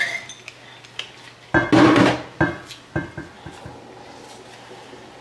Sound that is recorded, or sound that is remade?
recorded